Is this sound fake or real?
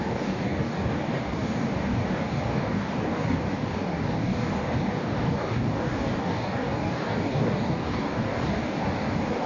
fake